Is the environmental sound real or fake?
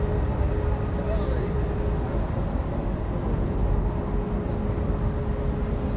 real